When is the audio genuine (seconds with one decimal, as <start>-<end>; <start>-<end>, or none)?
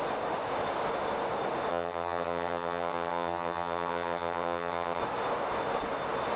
0.0-1.7; 5.0-6.4